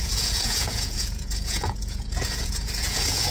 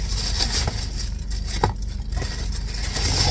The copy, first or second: first